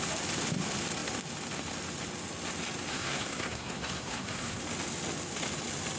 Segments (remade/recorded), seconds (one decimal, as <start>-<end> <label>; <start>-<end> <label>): 0.0-2.9 recorded; 2.9-4.6 remade; 4.6-6.0 recorded